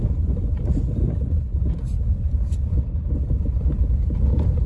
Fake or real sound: real